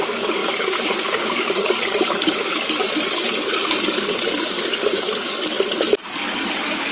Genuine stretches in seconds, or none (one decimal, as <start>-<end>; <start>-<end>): none